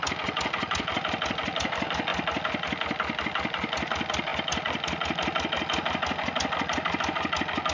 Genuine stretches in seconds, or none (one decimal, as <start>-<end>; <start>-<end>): 0.0-7.7